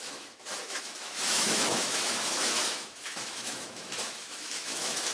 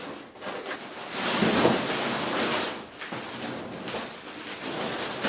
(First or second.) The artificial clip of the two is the first